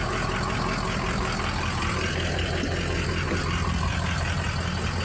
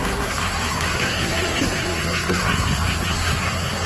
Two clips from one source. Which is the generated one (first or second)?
second